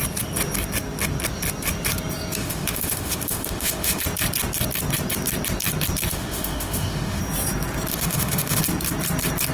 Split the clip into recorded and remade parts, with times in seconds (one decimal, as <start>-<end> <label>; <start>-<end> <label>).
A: 0.0-2.4 recorded; 2.4-4.0 remade; 4.0-6.1 recorded; 6.1-7.2 remade; 7.2-7.9 recorded; 7.9-8.6 remade; 8.6-9.5 recorded